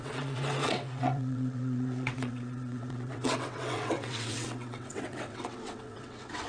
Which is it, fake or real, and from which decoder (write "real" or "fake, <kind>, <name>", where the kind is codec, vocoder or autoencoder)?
fake, vocoder, WaveNeXt